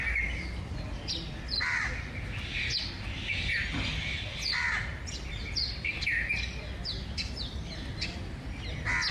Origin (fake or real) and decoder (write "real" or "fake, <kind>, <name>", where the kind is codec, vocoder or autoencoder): real